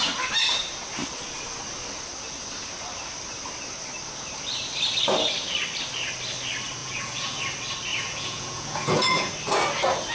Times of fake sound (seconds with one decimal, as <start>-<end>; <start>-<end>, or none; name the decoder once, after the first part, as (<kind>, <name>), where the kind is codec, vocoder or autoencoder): 6.8-7.4 (vocoder, Vocos); 7.9-9.3